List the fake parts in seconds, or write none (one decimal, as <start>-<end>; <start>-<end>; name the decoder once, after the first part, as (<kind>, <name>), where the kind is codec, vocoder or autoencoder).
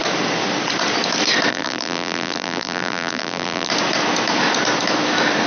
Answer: 1.5-3.7 (vocoder, BigVGAN v2)